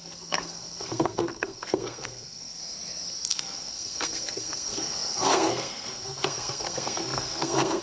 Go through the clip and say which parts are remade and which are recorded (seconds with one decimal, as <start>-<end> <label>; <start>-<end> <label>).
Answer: 0.0-2.6 remade; 2.6-3.3 recorded; 3.3-7.8 remade